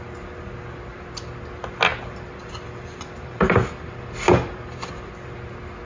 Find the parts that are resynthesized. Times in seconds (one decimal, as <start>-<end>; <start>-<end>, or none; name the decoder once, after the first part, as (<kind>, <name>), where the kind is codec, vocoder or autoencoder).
1.9-5.1 (vocoder, BigVGAN v2)